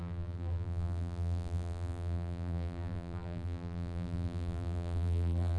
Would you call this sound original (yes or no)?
no